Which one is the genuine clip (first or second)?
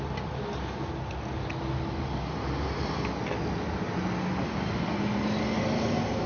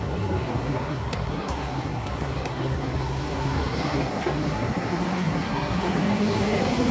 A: first